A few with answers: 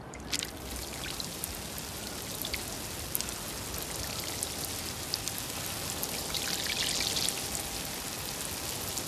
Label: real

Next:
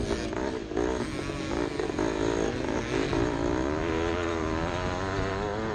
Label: real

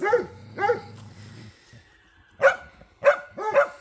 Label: real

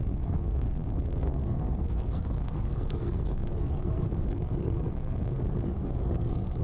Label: fake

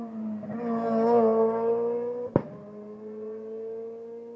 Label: real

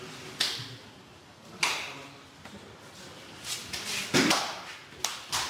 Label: real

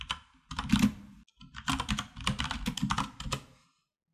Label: real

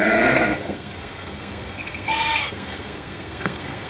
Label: fake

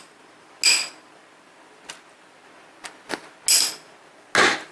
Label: real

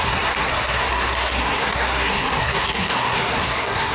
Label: fake